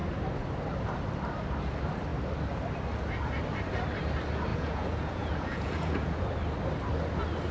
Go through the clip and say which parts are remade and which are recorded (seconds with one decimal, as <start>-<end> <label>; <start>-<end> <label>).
0.0-4.5 recorded; 4.5-6.2 remade; 6.2-7.5 recorded

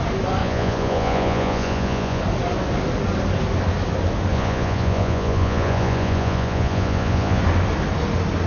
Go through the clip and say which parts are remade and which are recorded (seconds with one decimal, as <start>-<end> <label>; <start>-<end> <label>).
0.0-0.4 recorded; 0.4-2.2 remade; 2.2-4.3 recorded; 4.3-7.4 remade; 7.4-8.5 recorded